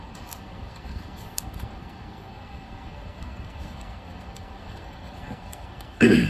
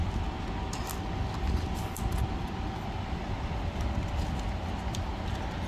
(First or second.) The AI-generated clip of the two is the first